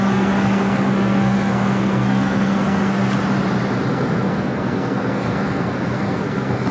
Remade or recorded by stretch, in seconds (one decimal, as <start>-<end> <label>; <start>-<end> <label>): 0.0-3.0 remade; 3.0-3.9 recorded; 3.9-6.7 remade